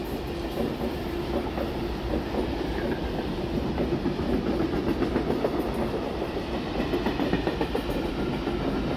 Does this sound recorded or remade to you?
recorded